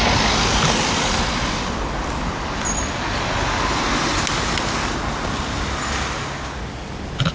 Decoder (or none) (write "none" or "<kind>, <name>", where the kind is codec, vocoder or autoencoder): none